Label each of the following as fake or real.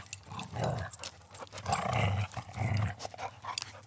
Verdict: real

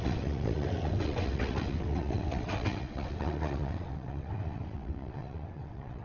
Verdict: fake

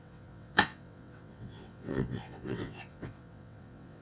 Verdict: fake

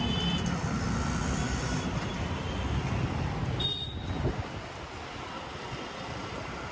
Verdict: real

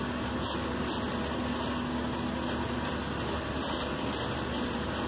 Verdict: real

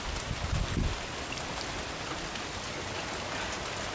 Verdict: real